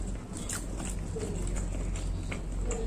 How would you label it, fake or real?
real